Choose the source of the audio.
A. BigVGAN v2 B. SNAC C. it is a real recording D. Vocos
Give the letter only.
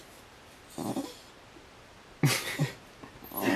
C